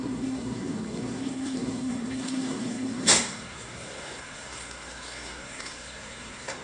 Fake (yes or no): yes